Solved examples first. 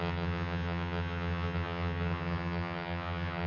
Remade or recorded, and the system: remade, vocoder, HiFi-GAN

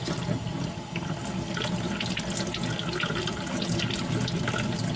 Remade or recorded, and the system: recorded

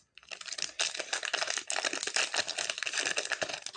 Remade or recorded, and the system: recorded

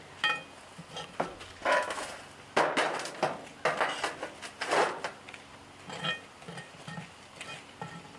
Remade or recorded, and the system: recorded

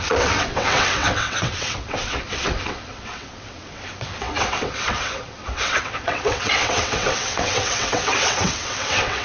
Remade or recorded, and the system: remade, vocoder, WaveNeXt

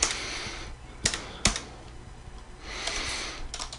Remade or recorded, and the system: recorded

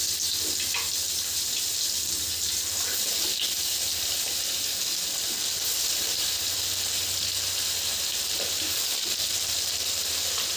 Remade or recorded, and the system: recorded